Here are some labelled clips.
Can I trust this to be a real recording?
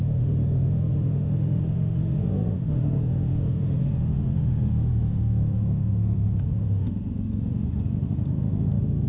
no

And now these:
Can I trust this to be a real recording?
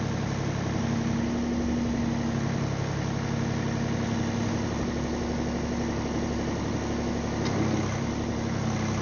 yes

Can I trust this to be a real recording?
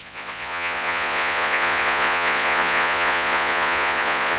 no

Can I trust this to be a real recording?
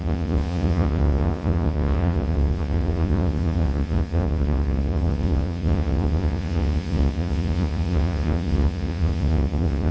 no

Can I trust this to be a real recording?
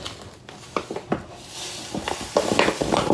yes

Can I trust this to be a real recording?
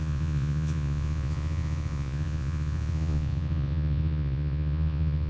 no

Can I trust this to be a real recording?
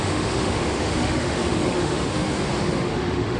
no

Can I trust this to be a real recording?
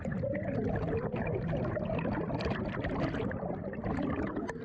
yes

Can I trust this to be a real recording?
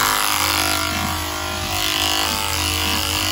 yes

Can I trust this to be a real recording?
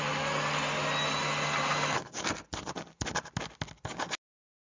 yes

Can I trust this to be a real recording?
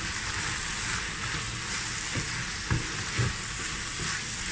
yes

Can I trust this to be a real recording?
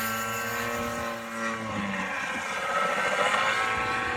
yes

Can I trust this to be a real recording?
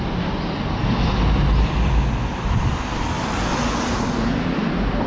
yes